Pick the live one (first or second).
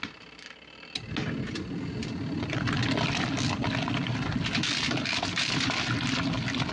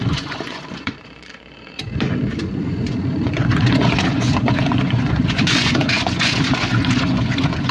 first